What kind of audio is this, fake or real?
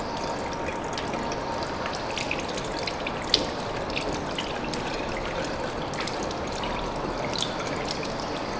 real